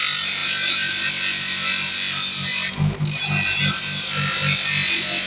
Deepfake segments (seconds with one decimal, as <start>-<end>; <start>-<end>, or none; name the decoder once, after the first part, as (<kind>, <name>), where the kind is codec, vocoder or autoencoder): none